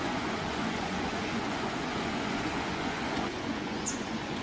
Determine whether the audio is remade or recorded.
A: remade